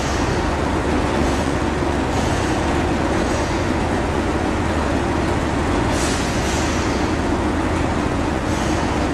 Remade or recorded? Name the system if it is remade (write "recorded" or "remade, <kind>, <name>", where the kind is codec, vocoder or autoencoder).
remade, vocoder, Vocos